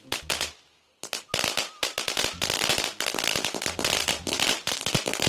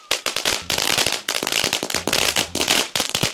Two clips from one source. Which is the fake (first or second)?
second